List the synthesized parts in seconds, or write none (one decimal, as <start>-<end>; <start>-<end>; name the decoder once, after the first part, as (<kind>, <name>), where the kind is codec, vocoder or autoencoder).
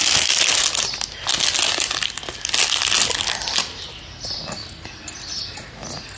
none